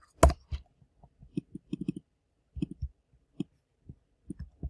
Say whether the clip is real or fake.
real